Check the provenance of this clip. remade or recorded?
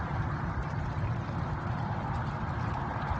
recorded